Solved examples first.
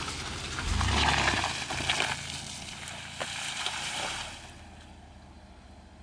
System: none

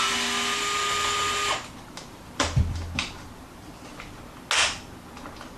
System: none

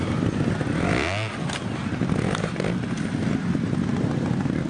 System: none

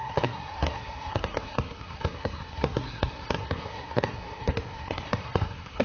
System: codec, SNAC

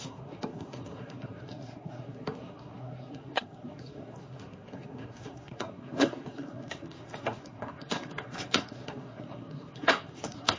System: codec, SNAC